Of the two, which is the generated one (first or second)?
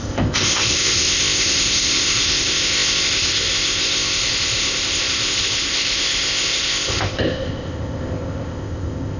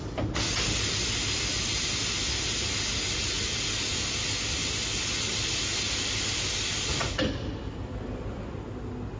first